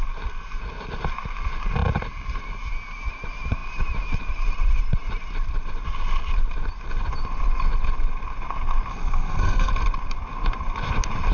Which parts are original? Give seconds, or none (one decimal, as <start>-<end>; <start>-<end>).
0.0-8.9; 9.7-11.3